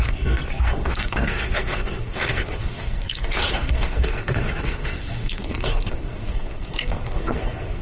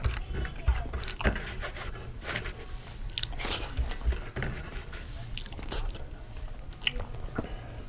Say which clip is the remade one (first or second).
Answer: first